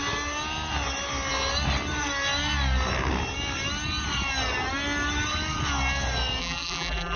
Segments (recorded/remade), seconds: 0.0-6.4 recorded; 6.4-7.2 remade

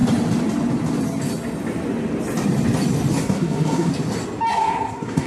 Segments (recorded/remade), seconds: 0.0-3.2 recorded; 3.2-3.9 remade; 3.9-4.5 recorded; 4.5-5.3 remade

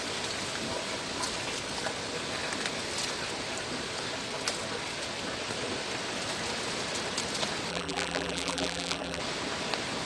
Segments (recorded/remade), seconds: 0.0-7.7 recorded; 7.7-9.2 remade; 9.2-10.1 recorded